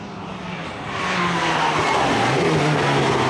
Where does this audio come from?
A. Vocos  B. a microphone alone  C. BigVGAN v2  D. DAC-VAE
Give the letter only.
B